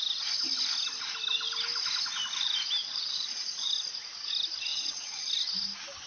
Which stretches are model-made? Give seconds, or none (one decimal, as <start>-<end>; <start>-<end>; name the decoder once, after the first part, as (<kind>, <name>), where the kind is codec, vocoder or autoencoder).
2.8-3.7 (vocoder, Vocos); 4.7-5.3